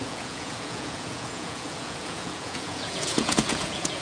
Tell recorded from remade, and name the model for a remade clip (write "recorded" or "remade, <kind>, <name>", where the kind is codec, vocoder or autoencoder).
remade, vocoder, Vocos